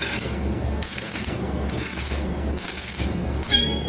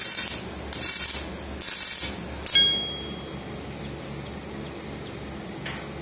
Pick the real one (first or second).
second